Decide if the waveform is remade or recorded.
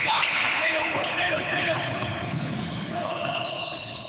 remade